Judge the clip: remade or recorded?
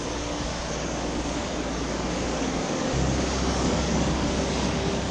remade